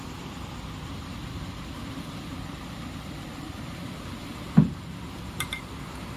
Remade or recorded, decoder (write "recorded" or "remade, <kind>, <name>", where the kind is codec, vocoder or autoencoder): remade, vocoder, BigVGAN v2